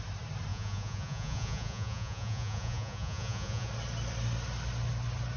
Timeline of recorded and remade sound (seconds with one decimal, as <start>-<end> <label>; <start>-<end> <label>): 0.0-0.5 recorded; 0.5-3.7 remade; 3.7-5.4 recorded